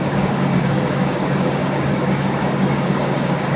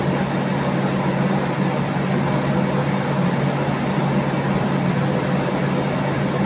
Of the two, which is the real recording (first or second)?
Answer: second